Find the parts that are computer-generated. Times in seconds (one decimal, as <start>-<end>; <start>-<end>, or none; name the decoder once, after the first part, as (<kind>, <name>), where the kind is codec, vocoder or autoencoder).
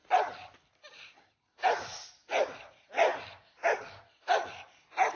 0.0-1.9 (vocoder, BigVGAN v2); 3.1-4.2